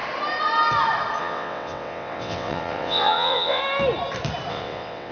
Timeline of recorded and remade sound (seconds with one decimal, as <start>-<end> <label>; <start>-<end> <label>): 0.0-1.2 recorded; 1.2-3.6 remade; 3.6-4.5 recorded; 4.5-5.1 remade